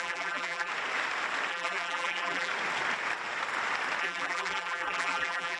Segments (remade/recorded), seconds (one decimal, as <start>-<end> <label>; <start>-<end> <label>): 0.0-0.7 remade; 0.7-1.5 recorded; 1.5-2.5 remade; 2.5-4.0 recorded; 4.0-5.6 remade